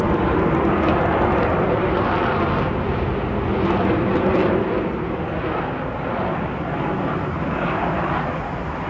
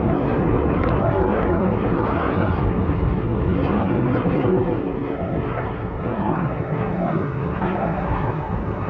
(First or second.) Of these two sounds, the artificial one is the second